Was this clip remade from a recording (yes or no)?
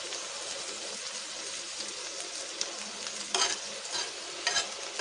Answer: no